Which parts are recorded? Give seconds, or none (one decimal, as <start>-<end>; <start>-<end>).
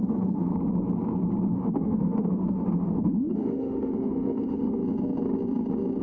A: 0.5-1.5; 4.8-6.0